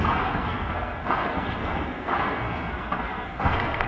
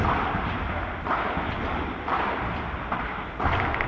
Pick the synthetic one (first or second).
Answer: first